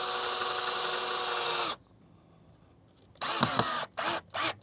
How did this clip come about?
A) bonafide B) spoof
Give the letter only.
A